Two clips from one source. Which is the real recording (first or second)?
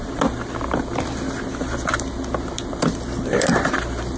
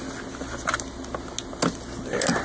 second